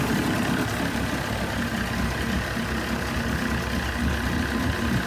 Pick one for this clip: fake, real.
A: real